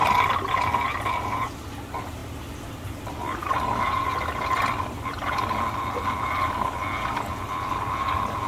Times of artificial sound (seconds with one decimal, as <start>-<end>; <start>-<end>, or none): none

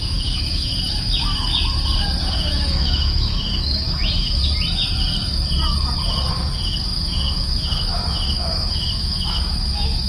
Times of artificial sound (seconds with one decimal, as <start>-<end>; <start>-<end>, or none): 0.0-1.5; 2.2-4.4; 6.3-10.1

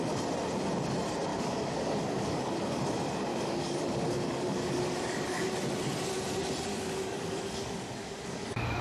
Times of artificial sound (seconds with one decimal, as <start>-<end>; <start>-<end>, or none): 1.3-2.8; 3.3-5.5; 6.7-8.8

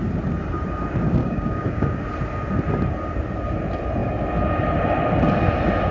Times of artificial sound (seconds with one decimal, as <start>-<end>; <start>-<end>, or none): 1.2-2.0